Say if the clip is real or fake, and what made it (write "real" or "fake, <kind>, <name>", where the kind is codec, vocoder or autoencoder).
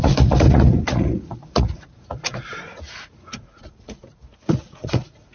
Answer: fake, vocoder, Vocos